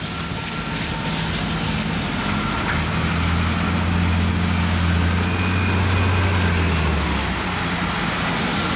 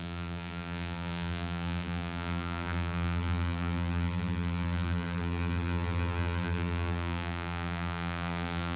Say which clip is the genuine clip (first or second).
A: first